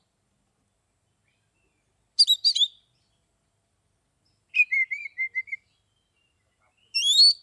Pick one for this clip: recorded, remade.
recorded